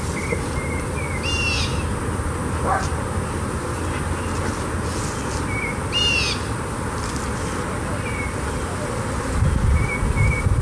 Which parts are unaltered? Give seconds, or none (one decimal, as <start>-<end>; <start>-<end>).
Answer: 0.0-10.6